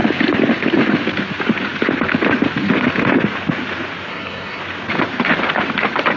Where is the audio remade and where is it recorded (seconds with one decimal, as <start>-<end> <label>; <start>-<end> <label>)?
0.0-4.1 recorded; 4.1-4.6 remade; 4.6-6.2 recorded